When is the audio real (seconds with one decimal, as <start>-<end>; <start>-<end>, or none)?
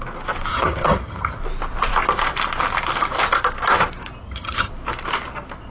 0.0-0.5; 1.4-4.2; 4.7-5.7